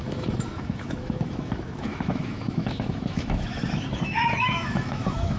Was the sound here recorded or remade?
remade